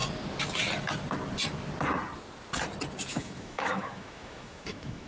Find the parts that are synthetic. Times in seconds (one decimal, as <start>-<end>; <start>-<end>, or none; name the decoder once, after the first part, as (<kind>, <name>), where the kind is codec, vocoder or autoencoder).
3.1-5.1 (autoencoder, DAC-VAE)